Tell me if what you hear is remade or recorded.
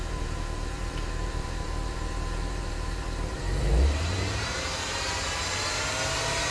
remade